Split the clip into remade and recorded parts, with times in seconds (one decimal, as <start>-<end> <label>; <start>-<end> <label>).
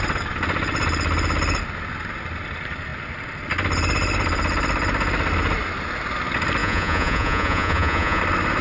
0.0-6.6 recorded; 6.6-8.2 remade; 8.2-8.6 recorded